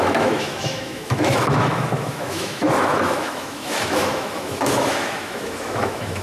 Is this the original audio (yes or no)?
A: no